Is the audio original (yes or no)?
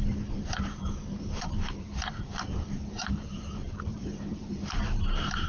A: no